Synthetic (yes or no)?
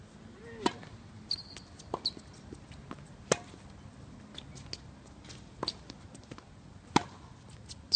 no